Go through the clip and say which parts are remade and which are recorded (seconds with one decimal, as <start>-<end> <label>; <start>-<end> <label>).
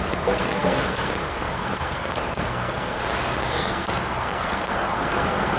0.0-3.0 remade; 3.0-3.5 recorded; 3.5-5.6 remade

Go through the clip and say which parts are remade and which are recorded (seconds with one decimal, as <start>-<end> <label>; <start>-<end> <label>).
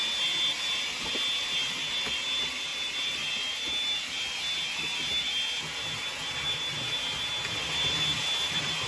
0.0-8.9 recorded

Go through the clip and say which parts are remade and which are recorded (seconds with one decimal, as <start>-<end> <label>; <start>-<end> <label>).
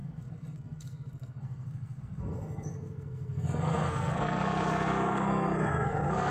0.0-6.3 remade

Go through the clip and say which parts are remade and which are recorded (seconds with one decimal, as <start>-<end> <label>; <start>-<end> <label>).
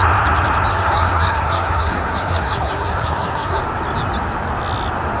0.0-0.7 recorded; 0.7-3.6 remade; 3.6-5.2 recorded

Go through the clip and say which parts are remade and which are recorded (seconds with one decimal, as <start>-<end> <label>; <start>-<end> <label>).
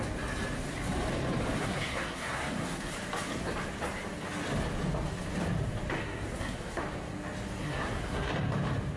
0.0-1.6 recorded; 1.6-2.9 remade; 2.9-6.0 recorded; 6.0-6.8 remade; 6.8-7.6 recorded; 7.6-8.3 remade; 8.3-9.0 recorded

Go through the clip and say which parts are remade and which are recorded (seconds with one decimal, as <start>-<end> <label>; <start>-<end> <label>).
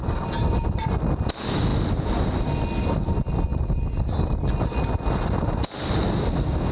0.0-6.7 recorded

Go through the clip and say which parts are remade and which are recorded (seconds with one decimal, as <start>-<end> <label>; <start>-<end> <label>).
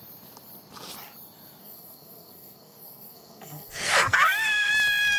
0.0-1.6 recorded; 1.6-4.7 remade; 4.7-5.2 recorded